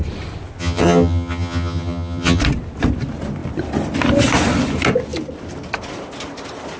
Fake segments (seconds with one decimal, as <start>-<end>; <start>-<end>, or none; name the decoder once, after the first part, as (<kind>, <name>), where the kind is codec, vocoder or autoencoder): 0.6-2.4 (vocoder, HiFi-GAN)